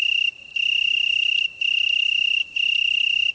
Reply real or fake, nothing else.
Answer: real